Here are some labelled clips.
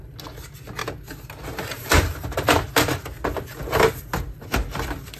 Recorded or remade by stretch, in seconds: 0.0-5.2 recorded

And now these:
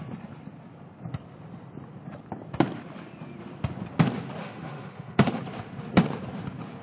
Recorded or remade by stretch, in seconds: 0.0-4.4 recorded; 4.4-5.4 remade; 5.4-6.8 recorded